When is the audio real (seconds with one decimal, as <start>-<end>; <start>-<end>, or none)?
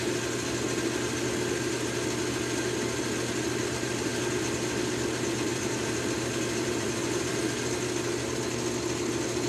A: 0.0-5.5; 7.4-9.5